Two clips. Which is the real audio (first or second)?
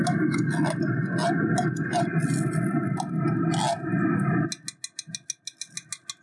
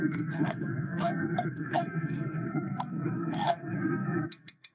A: first